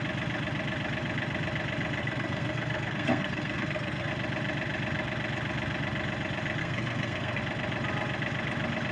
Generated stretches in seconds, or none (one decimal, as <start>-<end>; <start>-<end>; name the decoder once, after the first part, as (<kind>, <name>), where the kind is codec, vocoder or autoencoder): 2.0-4.1 (codec, SNAC); 6.6-7.4